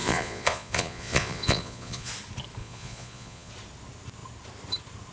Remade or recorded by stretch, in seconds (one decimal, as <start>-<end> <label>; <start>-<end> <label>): 0.0-2.1 remade; 2.1-2.6 recorded; 2.6-3.5 remade; 3.5-5.1 recorded